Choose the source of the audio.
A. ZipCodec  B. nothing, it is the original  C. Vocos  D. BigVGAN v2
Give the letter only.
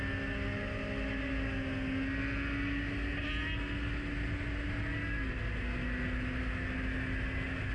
B